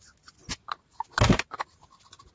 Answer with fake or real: real